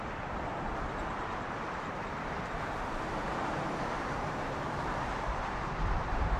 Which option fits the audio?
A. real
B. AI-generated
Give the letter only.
B